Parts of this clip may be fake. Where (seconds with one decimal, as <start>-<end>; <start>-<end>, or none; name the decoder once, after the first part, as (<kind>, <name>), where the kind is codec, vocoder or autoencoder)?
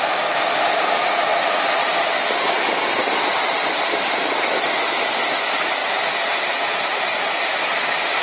1.3-2.4 (vocoder, BigVGAN v2); 3.0-4.2; 5.8-8.2